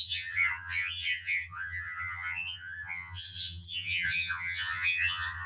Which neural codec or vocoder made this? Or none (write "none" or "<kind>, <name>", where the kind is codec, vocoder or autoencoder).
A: vocoder, HiFi-GAN